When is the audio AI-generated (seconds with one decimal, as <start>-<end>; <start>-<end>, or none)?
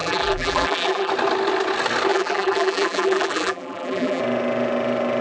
0.0-1.1; 2.1-4.2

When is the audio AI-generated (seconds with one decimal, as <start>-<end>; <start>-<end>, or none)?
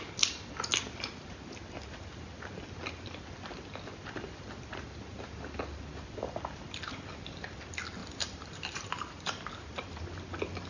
8.0-10.0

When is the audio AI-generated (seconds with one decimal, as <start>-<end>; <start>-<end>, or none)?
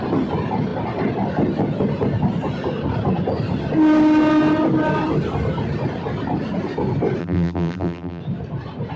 7.2-8.2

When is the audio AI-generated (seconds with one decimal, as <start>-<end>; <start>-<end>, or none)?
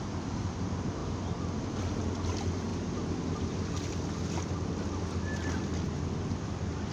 none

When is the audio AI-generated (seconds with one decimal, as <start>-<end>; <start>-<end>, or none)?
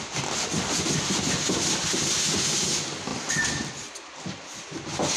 3.1-3.7